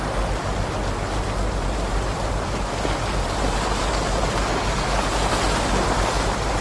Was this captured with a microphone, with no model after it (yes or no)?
yes